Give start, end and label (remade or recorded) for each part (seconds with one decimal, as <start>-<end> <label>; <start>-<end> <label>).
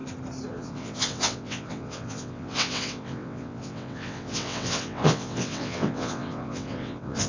0.0-0.5 recorded; 0.5-7.3 remade